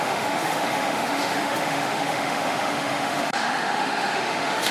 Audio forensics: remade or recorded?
remade